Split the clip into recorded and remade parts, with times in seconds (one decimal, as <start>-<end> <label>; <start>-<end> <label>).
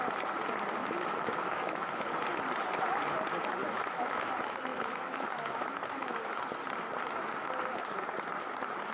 0.0-0.8 recorded; 0.8-1.7 remade; 1.7-3.6 recorded; 3.6-4.3 remade; 4.3-4.7 recorded; 4.7-6.4 remade; 6.4-8.9 recorded